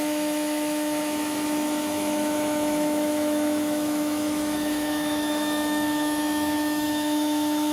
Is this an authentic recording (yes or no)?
no